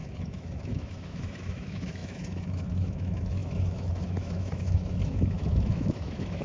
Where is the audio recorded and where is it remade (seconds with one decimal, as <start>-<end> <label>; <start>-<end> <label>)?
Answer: 0.0-6.4 remade